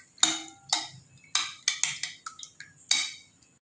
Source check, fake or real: real